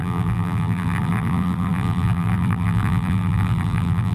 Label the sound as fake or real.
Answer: fake